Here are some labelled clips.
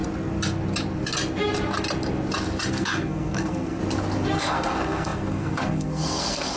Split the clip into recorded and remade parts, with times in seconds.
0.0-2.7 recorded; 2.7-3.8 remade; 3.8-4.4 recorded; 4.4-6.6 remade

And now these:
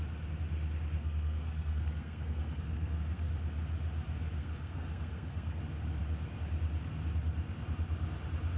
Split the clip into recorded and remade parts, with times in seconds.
0.0-1.0 recorded; 1.0-3.3 remade; 3.3-4.4 recorded; 4.4-5.6 remade; 5.6-8.6 recorded

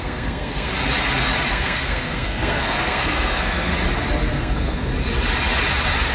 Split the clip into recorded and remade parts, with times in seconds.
0.0-0.7 remade; 0.7-1.5 recorded; 1.5-3.7 remade; 3.7-4.3 recorded; 4.3-4.9 remade; 4.9-6.1 recorded

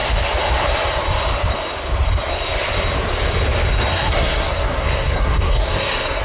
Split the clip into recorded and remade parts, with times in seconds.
0.0-3.9 recorded; 3.9-6.2 remade

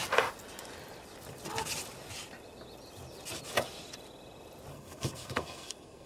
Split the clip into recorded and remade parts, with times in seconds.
0.0-4.7 recorded; 4.7-6.1 remade